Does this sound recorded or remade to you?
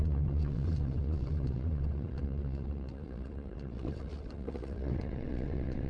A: remade